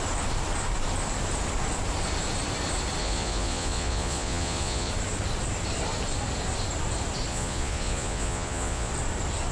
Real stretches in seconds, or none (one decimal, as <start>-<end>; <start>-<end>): 0.0-3.0; 4.9-7.3; 8.9-9.5